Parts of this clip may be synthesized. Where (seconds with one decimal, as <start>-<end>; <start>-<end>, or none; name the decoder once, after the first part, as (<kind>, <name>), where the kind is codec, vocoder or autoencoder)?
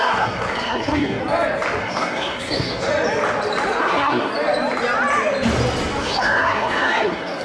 0.0-1.2 (codec, SNAC); 1.8-2.9; 3.8-4.3; 6.0-7.4